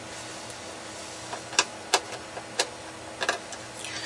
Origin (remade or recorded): recorded